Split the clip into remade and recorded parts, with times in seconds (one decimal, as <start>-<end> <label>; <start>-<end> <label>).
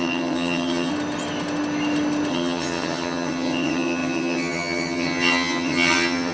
0.0-0.9 remade; 0.9-2.3 recorded; 2.3-6.3 remade